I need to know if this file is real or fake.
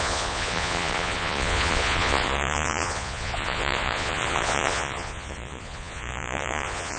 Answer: fake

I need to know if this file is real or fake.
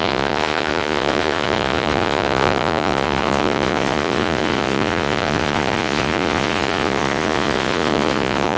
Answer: fake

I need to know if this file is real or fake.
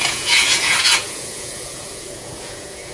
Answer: fake